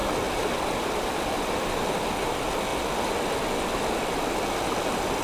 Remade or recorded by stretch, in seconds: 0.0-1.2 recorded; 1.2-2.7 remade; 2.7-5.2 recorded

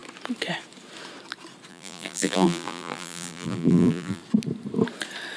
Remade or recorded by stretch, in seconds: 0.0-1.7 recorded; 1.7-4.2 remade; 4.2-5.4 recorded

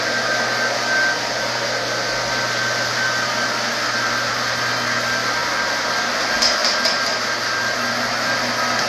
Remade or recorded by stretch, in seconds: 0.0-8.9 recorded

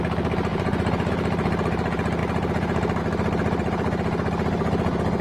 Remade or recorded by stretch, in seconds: 0.0-0.5 recorded; 0.5-1.1 remade; 1.1-5.2 recorded

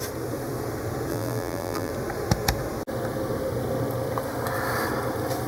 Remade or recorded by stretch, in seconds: 0.0-1.1 recorded; 1.1-1.9 remade; 1.9-5.5 recorded